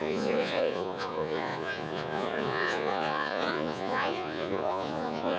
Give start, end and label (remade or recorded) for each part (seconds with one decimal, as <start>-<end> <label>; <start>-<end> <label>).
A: 0.0-5.4 remade